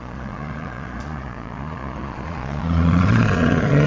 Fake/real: fake